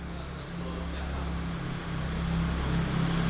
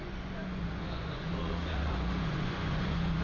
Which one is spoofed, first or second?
second